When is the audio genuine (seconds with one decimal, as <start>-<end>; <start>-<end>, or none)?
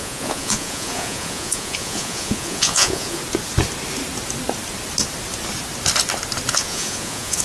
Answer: 3.2-6.5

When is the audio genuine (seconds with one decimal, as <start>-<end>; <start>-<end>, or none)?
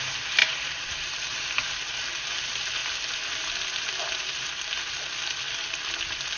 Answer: 0.0-0.4; 1.4-6.4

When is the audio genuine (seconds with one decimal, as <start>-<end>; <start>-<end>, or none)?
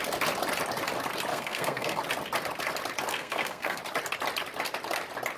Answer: 0.0-1.3; 2.0-3.1; 3.8-5.4